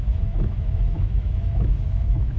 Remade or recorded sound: remade